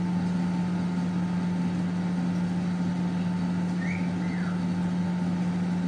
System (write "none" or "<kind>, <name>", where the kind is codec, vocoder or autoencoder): none